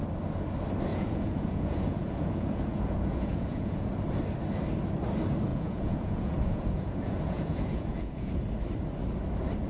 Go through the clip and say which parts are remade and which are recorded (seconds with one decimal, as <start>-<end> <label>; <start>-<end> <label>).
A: 0.0-0.9 recorded; 0.9-3.9 remade; 3.9-5.5 recorded; 5.5-8.4 remade; 8.4-9.7 recorded